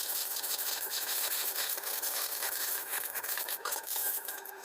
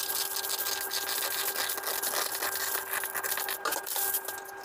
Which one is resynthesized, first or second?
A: first